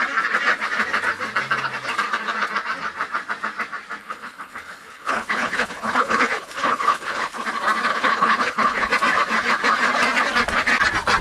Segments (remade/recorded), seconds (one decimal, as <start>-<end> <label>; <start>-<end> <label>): 0.0-4.0 recorded; 4.0-7.3 remade; 7.3-7.9 recorded; 7.9-8.9 remade; 8.9-11.2 recorded